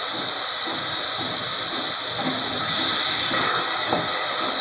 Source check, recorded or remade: recorded